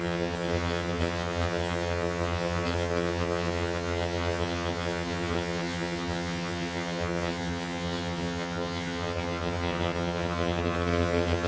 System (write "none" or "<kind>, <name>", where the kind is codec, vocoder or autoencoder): vocoder, HiFi-GAN